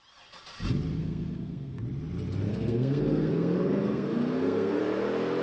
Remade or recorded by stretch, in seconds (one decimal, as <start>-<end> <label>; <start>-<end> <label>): 0.0-1.0 recorded; 1.0-1.8 remade; 1.8-2.5 recorded; 2.5-4.8 remade; 4.8-5.4 recorded